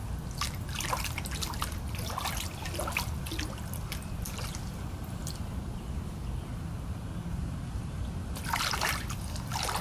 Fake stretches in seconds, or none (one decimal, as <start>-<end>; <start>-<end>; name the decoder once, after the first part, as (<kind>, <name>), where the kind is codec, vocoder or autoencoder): none